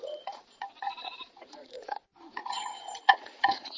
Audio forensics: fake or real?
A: fake